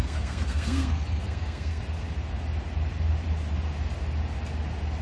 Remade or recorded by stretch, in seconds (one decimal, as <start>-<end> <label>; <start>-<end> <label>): 0.0-1.8 remade; 1.8-5.0 recorded